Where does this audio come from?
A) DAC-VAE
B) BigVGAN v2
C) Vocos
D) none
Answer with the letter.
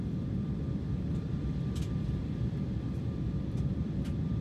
B